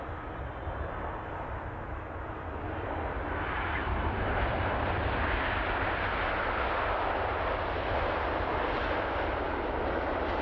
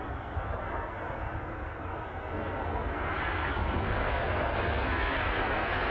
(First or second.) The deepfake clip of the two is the second